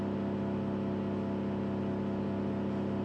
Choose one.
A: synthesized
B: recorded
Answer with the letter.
B